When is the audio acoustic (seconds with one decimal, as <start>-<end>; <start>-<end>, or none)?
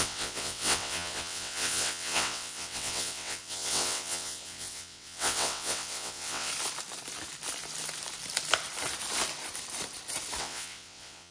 6.5-10.4